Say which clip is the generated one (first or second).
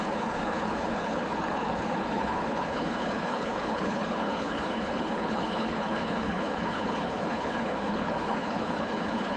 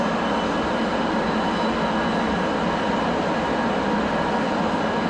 first